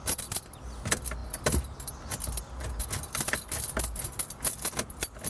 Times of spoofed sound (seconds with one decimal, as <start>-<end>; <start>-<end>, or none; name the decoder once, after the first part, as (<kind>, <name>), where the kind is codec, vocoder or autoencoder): none